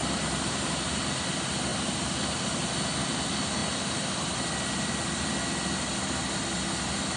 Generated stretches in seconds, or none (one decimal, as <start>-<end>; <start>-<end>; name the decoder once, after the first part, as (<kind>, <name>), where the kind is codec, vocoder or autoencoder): 0.0-0.9 (vocoder, BigVGAN v2)